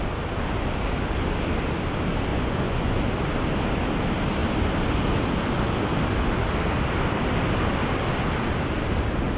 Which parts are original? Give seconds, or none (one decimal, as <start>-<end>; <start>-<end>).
0.0-2.3; 3.0-9.4

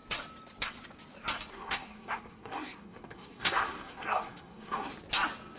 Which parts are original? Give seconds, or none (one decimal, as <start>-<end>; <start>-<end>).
0.0-1.5; 4.9-5.6

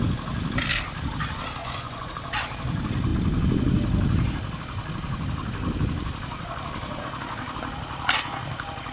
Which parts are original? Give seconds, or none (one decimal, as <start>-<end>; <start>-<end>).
0.0-1.6; 2.1-8.9

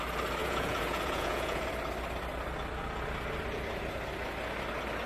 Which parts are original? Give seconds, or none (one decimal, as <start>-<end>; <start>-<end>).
0.0-0.4; 1.7-5.1

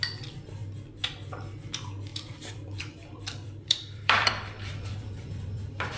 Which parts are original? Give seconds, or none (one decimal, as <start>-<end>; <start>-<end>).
0.0-2.1

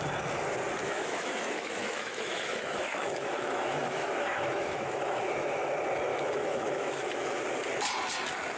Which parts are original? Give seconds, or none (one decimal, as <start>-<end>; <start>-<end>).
0.0-0.8; 5.6-6.1; 7.4-8.6

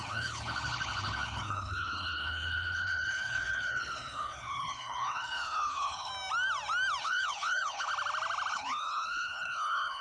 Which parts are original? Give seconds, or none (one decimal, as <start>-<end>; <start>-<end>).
6.1-7.0; 7.9-8.5